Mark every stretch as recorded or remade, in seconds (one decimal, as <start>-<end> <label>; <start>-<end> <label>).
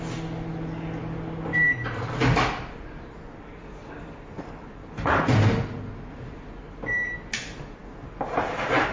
0.0-8.9 recorded